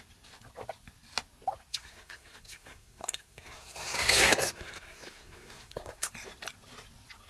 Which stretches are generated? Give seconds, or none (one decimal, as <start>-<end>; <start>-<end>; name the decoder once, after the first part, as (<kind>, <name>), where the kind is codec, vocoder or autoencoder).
1.7-6.1 (codec, SNAC)